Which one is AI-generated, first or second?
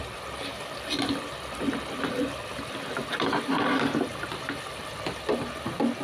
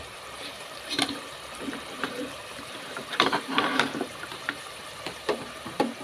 second